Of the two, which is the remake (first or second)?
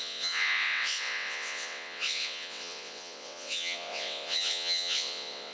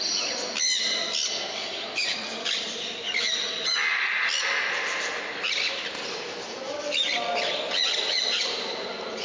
first